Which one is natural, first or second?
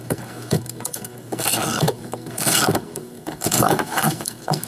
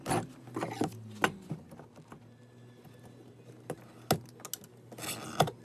second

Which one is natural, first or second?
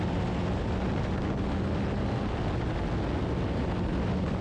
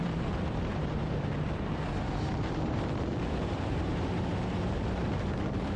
first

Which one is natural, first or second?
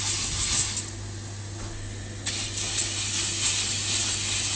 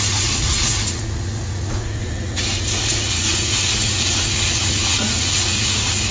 first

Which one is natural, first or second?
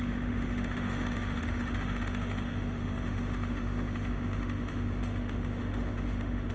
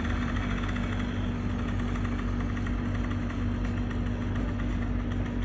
second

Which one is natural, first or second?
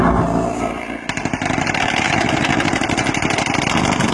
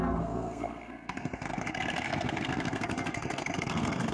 first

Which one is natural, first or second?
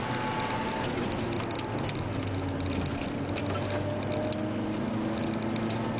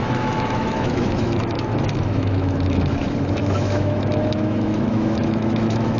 first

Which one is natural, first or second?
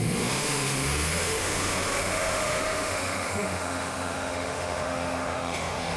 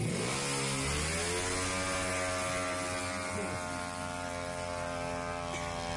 second